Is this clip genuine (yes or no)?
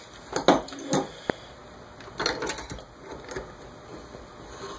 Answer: yes